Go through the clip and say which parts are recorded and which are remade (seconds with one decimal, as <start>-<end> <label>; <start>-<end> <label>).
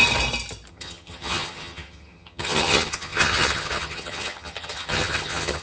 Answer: 0.0-0.7 recorded; 0.7-5.6 remade